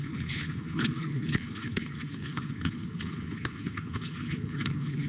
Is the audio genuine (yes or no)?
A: no